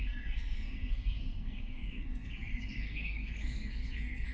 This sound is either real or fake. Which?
fake